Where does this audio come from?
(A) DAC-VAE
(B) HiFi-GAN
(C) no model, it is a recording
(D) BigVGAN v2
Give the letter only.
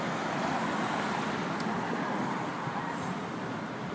C